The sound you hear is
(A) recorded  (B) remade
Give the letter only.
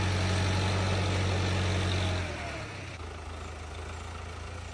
A